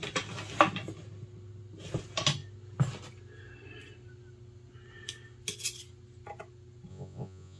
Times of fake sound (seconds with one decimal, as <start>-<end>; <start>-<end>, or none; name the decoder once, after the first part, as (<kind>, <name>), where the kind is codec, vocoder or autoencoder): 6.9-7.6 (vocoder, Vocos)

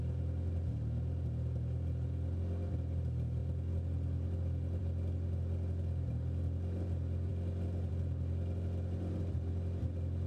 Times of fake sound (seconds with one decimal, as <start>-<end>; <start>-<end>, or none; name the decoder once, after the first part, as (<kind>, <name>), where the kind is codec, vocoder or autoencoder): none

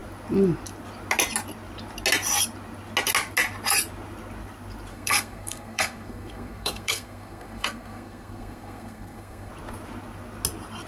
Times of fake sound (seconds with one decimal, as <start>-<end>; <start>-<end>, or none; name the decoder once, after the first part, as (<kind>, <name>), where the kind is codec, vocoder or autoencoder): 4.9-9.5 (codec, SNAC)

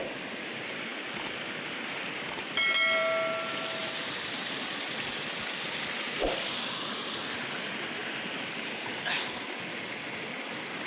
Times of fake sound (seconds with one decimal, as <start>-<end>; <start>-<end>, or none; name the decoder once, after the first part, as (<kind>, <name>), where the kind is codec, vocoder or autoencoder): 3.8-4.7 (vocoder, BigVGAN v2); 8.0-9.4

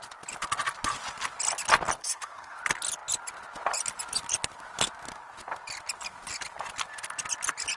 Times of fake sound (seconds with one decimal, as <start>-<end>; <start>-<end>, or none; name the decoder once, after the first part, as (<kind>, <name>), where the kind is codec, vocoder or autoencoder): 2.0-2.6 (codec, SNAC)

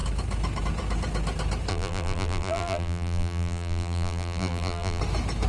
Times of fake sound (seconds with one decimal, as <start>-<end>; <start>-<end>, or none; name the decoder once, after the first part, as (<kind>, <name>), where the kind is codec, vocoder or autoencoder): 1.7-5.0 (vocoder, BigVGAN v2)

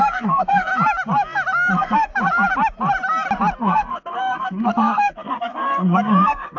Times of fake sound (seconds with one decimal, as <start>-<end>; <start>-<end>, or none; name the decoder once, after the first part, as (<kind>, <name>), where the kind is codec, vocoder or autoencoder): 0.0-0.7 (codec, SNAC); 1.7-2.1; 3.6-6.6